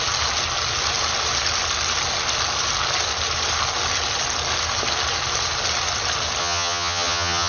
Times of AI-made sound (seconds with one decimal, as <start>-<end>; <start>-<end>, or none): 6.4-7.5